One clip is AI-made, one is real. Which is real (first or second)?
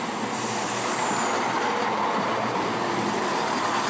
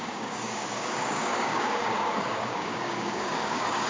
first